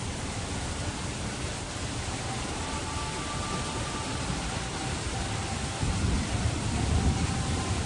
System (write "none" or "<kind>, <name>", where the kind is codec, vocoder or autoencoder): none